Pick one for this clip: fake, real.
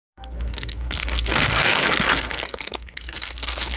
fake